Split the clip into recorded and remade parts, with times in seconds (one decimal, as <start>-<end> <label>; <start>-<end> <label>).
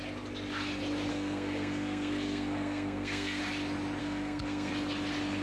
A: 0.0-1.1 recorded; 1.1-3.4 remade; 3.4-4.0 recorded; 4.0-4.7 remade; 4.7-5.4 recorded